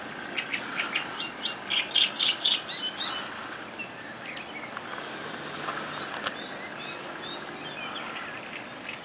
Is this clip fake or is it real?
real